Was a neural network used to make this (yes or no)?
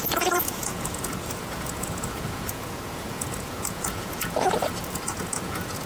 yes